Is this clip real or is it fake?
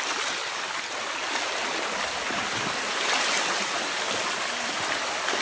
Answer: real